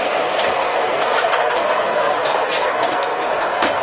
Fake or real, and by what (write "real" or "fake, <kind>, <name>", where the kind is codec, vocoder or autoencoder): fake, codec, SNAC